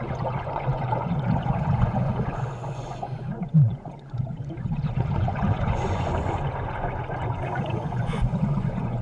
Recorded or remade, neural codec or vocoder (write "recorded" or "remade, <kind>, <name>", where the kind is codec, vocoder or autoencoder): remade, vocoder, Vocos